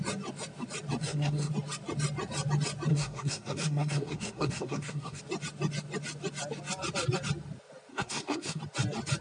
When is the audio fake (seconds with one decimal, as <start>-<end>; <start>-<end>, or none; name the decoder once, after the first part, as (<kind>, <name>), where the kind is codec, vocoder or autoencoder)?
1.0-1.5 (codec, SNAC); 2.9-5.2; 7.9-8.6